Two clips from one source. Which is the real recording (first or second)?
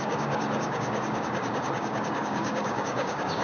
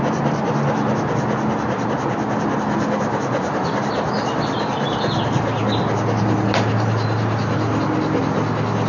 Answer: second